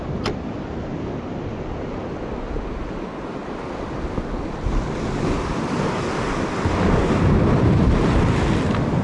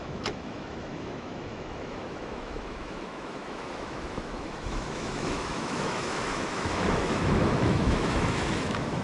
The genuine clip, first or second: first